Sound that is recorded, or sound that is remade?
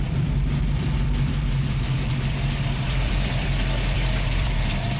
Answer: remade